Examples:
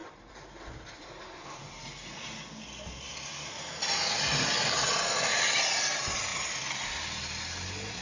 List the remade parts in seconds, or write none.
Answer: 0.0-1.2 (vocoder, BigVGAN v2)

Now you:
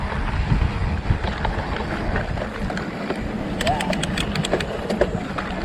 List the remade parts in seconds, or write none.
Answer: none

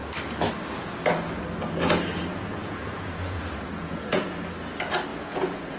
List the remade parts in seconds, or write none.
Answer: 2.3-4.4 (vocoder, Vocos); 5.1-5.8

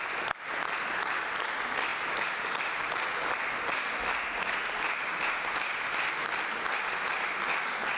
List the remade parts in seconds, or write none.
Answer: none

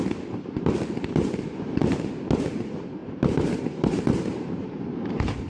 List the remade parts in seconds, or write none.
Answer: 0.0-1.8 (vocoder, BigVGAN v2); 2.5-5.5